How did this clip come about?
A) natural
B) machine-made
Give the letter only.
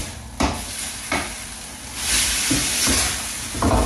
A